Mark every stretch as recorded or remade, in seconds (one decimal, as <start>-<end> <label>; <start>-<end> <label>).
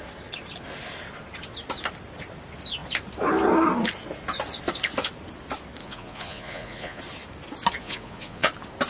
0.0-5.8 recorded; 5.8-7.0 remade; 7.0-7.8 recorded; 7.8-8.5 remade; 8.5-8.9 recorded